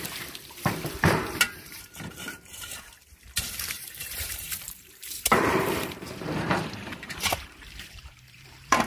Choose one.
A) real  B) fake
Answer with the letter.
B